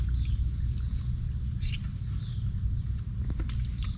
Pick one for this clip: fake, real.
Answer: real